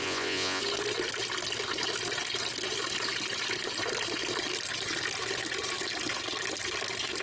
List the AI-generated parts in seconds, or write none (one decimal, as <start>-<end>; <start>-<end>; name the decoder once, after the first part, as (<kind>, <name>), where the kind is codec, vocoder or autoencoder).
0.0-0.6 (vocoder, Vocos)